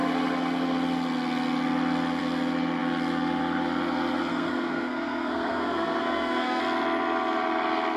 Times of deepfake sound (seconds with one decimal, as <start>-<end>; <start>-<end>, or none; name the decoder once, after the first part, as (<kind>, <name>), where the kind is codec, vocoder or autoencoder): 4.3-6.6 (codec, SNAC)